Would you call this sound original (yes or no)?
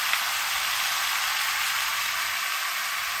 yes